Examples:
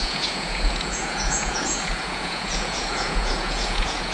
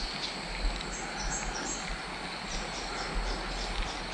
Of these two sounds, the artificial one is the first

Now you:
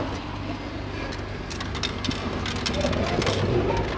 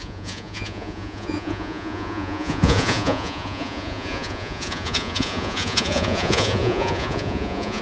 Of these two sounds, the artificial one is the second